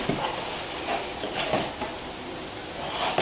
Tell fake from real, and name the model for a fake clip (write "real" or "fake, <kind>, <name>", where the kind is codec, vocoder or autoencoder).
real